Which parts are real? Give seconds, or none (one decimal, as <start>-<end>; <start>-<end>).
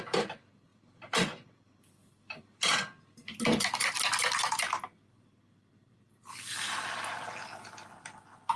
0.0-8.6